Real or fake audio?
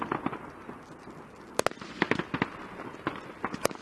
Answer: real